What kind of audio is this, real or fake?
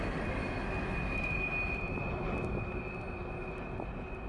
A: real